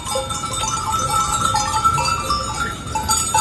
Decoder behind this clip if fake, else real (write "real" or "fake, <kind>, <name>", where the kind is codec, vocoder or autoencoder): real